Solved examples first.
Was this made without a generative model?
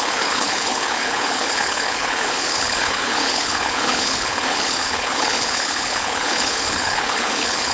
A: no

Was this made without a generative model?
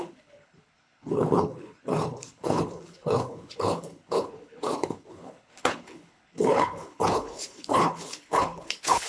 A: no